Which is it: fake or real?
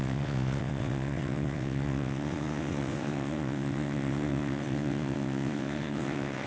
fake